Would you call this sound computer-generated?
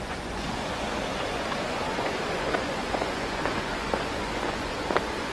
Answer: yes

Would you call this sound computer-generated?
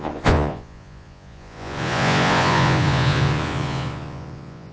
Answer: yes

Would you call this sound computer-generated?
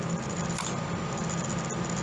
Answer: no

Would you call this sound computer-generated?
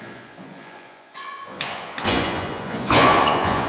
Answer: yes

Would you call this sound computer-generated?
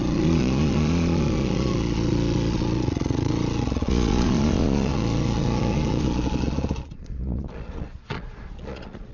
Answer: yes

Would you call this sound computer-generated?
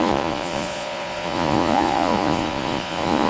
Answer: yes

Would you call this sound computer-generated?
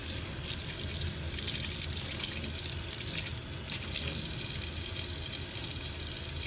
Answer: no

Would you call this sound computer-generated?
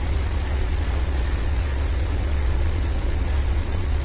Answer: yes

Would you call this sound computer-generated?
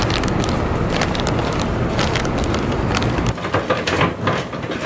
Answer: no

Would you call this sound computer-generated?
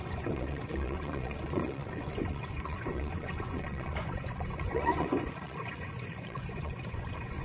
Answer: yes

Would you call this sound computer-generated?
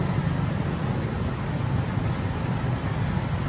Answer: no